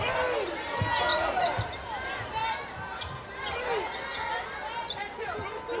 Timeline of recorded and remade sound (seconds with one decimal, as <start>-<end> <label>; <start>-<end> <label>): 0.0-1.1 recorded; 1.1-1.6 remade; 1.6-5.8 recorded